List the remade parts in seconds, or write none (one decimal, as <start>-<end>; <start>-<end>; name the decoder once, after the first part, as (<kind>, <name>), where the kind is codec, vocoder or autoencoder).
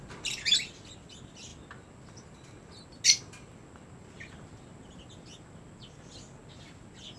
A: none